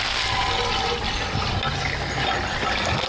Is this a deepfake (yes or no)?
no